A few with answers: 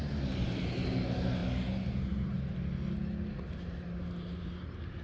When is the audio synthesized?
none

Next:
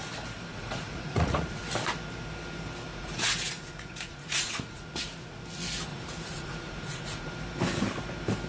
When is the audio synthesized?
0.5-1.6 (vocoder, Vocos); 2.9-5.4; 5.9-7.3

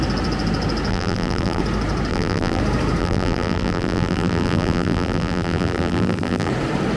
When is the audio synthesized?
0.9-1.6 (vocoder, BigVGAN v2); 2.1-2.6; 3.0-6.5